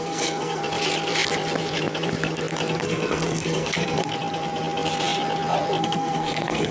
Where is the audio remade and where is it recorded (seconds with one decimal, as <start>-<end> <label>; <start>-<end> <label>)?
0.0-0.6 remade; 0.6-2.8 recorded; 2.8-4.1 remade; 4.1-5.8 recorded; 5.8-6.7 remade